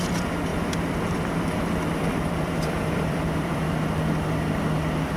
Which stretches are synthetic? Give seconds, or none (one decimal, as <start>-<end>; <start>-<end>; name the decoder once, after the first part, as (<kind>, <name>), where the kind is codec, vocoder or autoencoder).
0.5-3.6 (vocoder, BigVGAN v2)